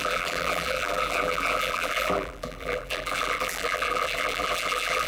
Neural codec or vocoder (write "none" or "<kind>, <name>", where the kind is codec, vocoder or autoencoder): vocoder, BigVGAN v2